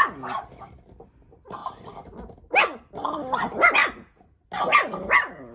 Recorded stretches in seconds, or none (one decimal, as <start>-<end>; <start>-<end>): 0.0-3.8; 4.5-5.5